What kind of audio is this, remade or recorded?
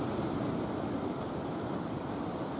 recorded